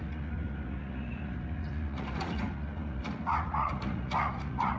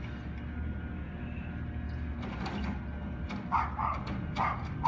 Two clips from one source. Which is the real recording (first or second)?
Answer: second